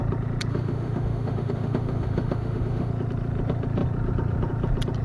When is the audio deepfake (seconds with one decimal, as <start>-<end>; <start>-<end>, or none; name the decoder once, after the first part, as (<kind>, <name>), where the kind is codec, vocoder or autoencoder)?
0.5-2.9 (autoencoder, DAC-VAE)